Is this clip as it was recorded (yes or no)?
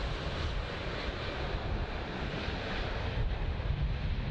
yes